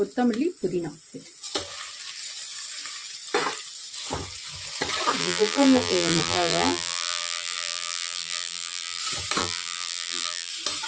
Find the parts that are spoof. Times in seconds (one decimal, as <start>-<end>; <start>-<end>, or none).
5.2-9.0; 9.4-10.5